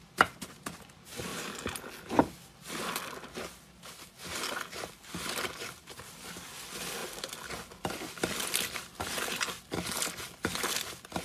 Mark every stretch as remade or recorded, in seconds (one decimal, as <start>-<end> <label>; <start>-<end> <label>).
0.0-11.2 recorded